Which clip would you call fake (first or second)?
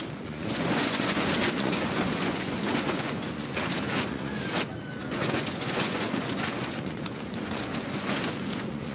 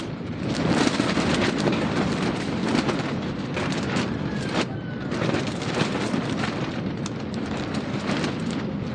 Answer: first